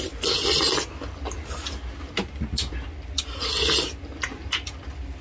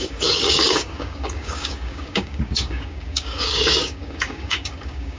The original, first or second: first